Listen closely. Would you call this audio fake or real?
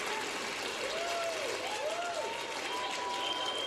real